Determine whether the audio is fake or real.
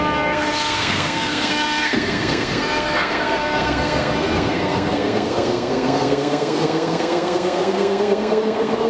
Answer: fake